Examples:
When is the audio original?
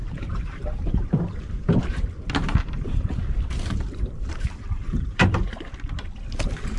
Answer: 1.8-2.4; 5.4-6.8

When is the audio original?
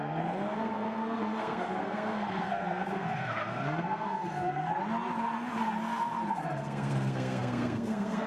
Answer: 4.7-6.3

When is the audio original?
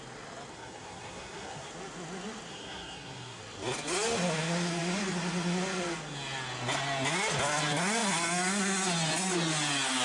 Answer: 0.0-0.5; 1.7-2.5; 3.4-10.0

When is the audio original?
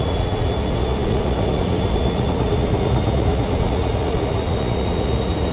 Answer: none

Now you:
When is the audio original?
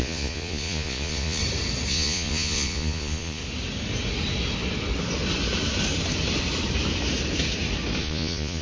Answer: 1.4-1.9; 3.4-8.0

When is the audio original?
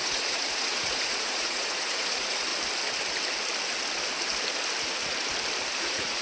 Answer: 2.5-5.8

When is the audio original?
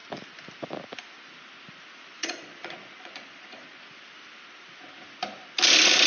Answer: 0.0-2.2; 3.8-6.1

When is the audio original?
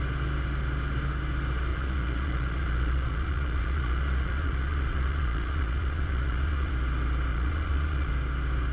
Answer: 0.0-1.7; 6.7-7.3; 8.1-8.7